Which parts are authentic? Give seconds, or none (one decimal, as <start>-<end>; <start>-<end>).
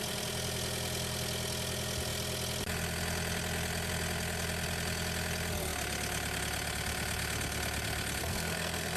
0.0-8.2